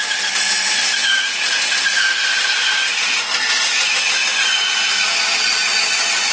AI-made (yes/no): no